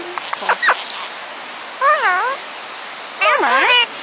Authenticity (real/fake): real